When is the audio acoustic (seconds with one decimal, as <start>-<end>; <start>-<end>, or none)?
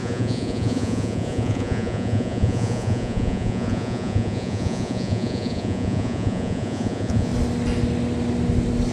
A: 7.3-8.9